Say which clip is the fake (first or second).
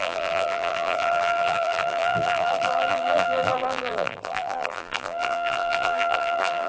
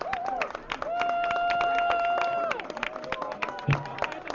first